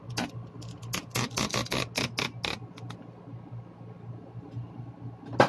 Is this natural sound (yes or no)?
yes